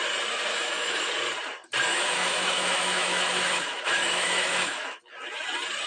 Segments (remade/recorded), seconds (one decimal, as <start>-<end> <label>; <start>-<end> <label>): 0.0-0.5 recorded; 0.5-1.1 remade; 1.1-1.9 recorded; 1.9-5.0 remade; 5.0-5.9 recorded